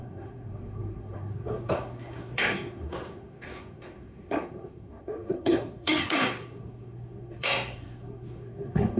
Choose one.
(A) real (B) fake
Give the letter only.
B